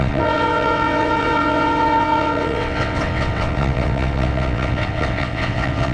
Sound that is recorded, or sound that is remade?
remade